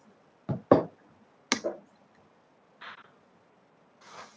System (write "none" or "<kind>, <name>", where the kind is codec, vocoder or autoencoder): none